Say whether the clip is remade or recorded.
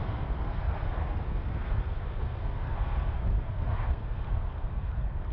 remade